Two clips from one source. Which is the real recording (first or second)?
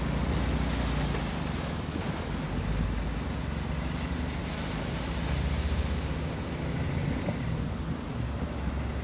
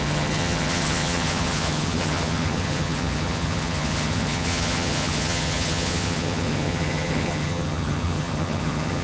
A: first